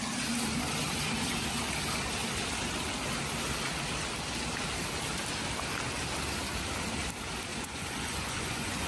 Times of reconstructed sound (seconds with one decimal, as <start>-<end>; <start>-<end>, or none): 7.5-8.9